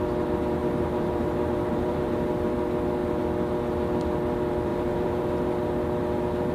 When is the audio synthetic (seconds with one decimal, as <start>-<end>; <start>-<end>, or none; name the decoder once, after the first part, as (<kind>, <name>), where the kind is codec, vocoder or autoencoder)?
0.6-2.3 (vocoder, BigVGAN v2); 4.7-5.2